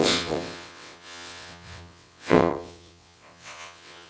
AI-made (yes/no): yes